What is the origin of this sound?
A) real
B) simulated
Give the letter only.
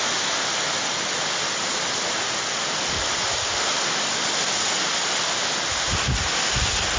A